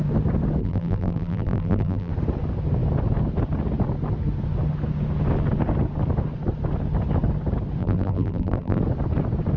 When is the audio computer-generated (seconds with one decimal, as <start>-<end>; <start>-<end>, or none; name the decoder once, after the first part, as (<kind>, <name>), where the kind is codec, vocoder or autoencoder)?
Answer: 0.6-2.1 (vocoder, BigVGAN v2); 7.8-8.8

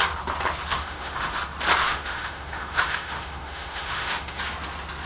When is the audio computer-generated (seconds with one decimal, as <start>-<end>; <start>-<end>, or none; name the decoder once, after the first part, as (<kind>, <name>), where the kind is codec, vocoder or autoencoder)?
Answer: 0.7-1.4 (autoencoder, DAC-VAE); 1.8-4.4